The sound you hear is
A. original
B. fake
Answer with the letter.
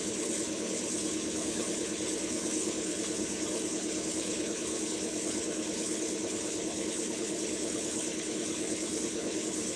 B